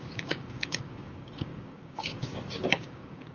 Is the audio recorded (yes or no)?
no